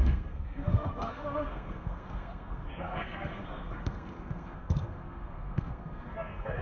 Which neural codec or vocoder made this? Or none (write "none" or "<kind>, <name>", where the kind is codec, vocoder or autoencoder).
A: codec, SNAC